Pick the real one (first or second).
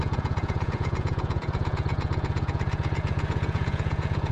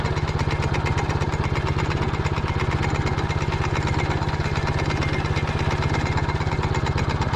second